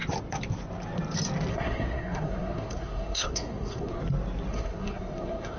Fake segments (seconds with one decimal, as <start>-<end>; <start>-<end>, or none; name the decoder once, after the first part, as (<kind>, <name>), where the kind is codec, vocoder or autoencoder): 1.5-4.0 (codec, SNAC); 4.5-5.6

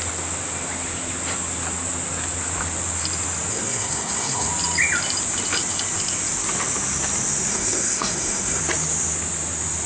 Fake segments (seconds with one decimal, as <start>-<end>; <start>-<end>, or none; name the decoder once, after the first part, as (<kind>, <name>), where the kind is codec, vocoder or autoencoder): 3.5-4.5 (codec, SNAC); 7.5-8.6

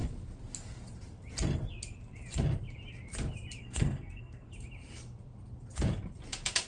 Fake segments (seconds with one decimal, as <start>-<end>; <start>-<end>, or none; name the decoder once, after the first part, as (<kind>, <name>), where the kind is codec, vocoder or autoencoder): 3.6-4.5 (codec, SNAC)

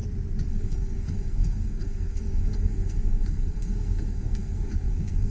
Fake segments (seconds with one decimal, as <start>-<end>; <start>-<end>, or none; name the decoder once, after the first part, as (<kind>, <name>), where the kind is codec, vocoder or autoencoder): 0.5-5.3 (codec, SNAC)

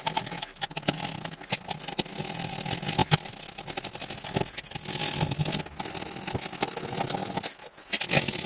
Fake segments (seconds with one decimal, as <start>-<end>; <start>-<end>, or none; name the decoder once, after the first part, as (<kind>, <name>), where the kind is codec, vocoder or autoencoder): none